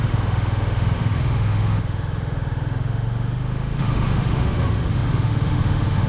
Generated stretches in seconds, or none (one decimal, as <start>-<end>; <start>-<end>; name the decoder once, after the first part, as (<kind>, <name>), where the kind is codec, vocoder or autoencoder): 0.0-6.1 (autoencoder, DAC-VAE)